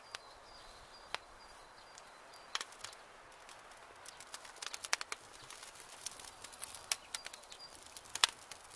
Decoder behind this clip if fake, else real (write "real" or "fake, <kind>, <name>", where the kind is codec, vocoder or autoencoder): real